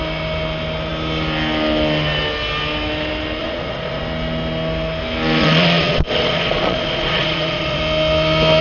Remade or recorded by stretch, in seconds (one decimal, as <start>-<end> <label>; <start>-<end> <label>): 0.0-3.4 recorded; 3.4-4.0 remade; 4.0-5.4 recorded; 5.4-7.8 remade; 7.8-8.6 recorded